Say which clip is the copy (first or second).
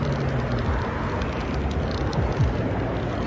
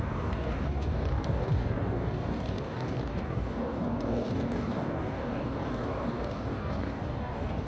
second